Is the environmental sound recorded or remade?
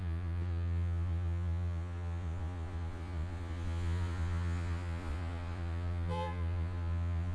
remade